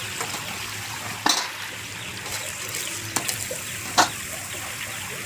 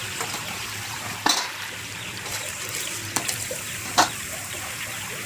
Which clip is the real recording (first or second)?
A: first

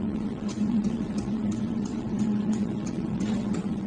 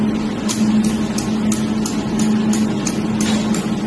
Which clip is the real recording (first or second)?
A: second